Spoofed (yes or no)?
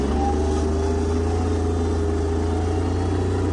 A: no